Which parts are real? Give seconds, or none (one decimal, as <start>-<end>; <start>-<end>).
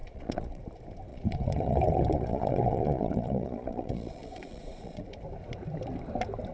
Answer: 0.6-1.1; 5.0-6.5